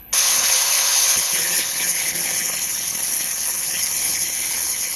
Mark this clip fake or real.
fake